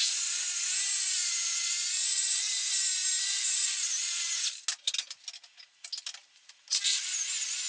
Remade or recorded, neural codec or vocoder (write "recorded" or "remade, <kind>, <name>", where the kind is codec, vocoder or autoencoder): recorded